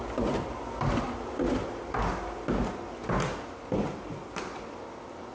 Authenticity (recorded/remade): recorded